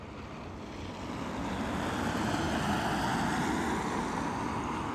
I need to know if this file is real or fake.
real